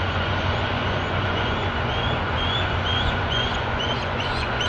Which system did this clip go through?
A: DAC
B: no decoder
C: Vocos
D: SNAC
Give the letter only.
C